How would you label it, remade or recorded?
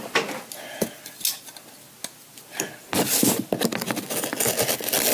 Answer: recorded